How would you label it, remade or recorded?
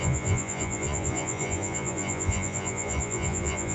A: remade